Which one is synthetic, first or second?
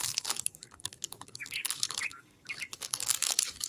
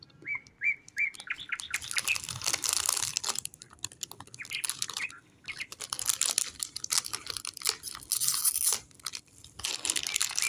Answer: first